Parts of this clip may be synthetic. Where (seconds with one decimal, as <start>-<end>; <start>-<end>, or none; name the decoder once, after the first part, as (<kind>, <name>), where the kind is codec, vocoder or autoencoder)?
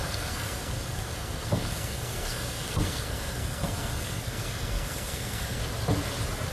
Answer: 0.0-5.6 (codec, SNAC)